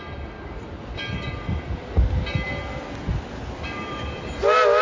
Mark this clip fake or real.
real